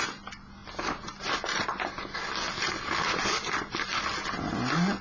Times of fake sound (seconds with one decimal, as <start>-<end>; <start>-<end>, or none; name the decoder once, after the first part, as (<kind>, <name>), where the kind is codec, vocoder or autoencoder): none